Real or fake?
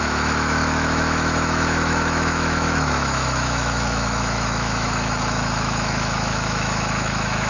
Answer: fake